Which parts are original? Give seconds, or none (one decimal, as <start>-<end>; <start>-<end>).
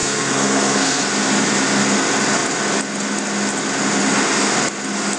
1.0-5.2